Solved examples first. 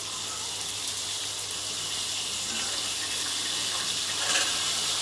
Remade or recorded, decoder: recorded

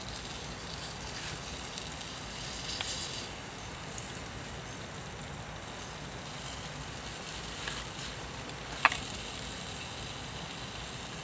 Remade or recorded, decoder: recorded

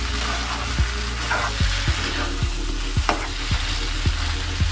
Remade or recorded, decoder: recorded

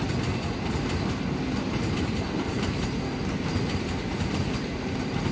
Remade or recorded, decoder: recorded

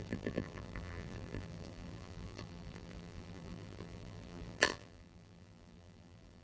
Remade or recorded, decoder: remade, vocoder, BigVGAN v2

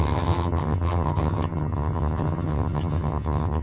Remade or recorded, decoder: remade, vocoder, HiFi-GAN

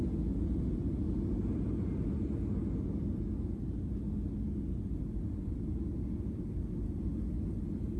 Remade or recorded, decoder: recorded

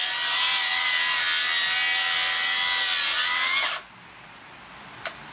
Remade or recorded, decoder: recorded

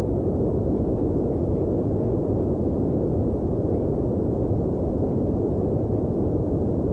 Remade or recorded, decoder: recorded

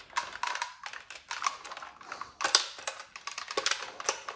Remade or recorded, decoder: recorded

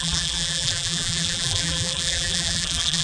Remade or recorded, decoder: remade, vocoder, BigVGAN v2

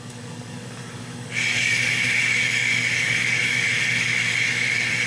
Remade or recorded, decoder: remade, codec, DAC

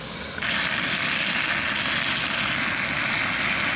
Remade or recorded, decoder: recorded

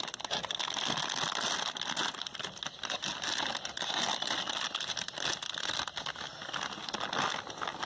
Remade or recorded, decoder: recorded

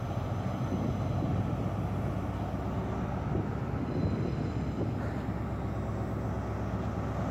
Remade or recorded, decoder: recorded